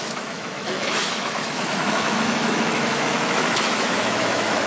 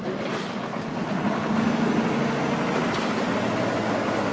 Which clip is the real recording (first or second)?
second